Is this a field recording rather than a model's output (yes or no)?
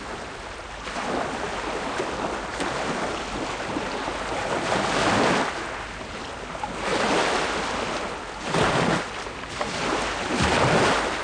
yes